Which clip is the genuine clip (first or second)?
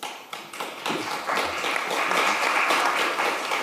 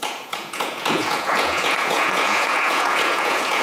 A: first